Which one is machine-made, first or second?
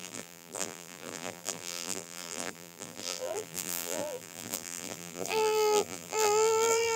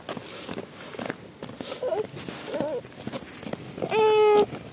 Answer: first